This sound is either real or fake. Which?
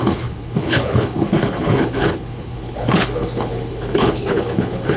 fake